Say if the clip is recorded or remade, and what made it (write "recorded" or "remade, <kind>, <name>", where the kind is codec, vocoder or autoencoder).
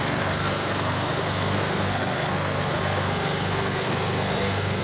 remade, codec, SNAC